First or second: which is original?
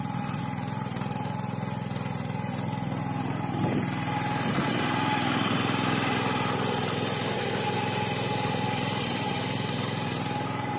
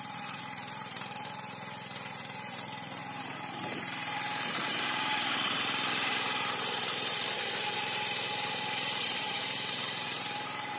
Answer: first